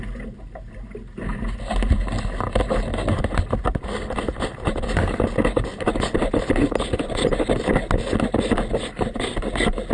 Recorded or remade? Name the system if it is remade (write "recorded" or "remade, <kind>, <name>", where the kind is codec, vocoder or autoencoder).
recorded